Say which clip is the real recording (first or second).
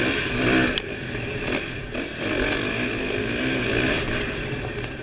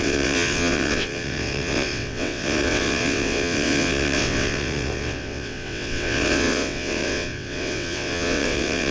first